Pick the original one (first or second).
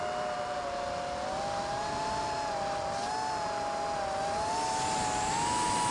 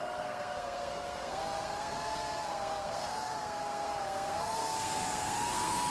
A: first